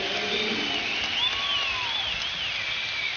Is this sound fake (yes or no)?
no